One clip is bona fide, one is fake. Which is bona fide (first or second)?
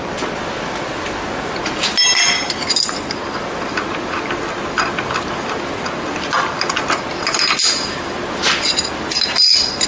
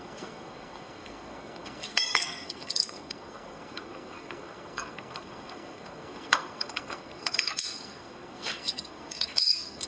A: first